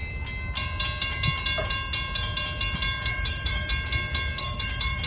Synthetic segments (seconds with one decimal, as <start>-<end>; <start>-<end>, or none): 3.1-3.7; 4.4-5.1